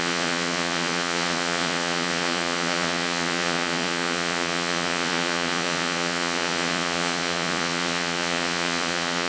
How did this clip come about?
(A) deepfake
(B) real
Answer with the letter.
A